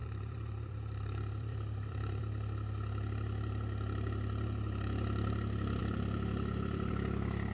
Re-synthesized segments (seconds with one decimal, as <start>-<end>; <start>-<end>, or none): 0.0-2.2; 5.8-6.9